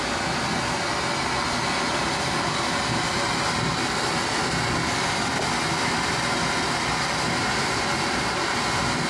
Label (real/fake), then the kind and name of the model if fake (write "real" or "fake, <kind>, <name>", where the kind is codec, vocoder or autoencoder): real